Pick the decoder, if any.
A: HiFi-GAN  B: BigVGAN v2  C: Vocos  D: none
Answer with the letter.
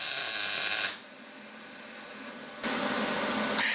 D